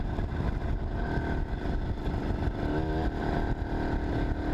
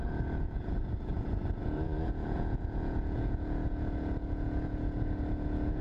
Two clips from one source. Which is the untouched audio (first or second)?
first